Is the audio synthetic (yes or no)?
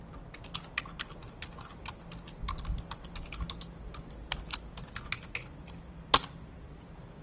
no